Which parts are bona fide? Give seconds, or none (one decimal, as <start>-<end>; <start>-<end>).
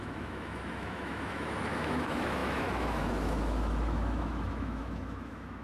none